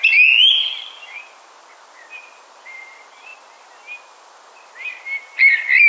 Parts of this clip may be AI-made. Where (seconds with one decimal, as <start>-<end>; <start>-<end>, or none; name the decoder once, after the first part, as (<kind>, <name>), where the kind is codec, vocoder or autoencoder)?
none